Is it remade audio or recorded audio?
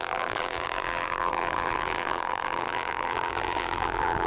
remade